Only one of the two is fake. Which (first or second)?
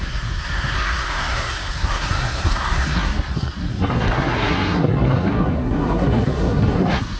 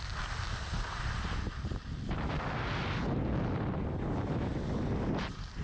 first